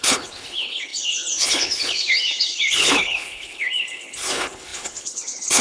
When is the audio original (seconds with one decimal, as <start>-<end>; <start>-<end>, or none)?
none